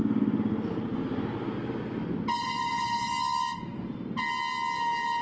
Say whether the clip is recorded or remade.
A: recorded